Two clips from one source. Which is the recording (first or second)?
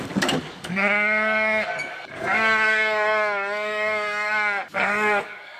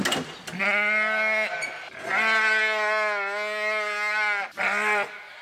second